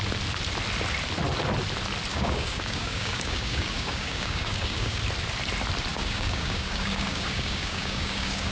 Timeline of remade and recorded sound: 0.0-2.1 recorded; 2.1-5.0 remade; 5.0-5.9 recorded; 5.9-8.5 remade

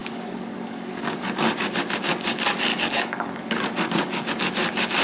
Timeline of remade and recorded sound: 0.0-1.2 remade; 1.2-2.7 recorded; 2.7-4.3 remade; 4.3-5.0 recorded

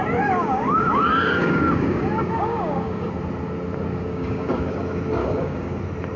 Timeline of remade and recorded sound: 0.0-0.4 recorded; 0.4-1.0 remade; 1.0-1.4 recorded; 1.4-3.1 remade; 3.1-3.9 recorded; 3.9-4.7 remade; 4.7-5.2 recorded; 5.2-5.8 remade; 5.8-6.2 recorded